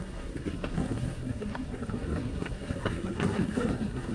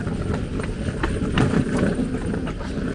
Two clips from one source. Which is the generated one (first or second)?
first